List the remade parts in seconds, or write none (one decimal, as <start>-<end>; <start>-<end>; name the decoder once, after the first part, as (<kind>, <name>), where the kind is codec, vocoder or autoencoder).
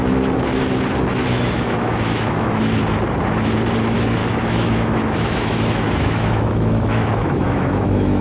1.2-2.6 (autoencoder, DAC-VAE); 4.2-8.2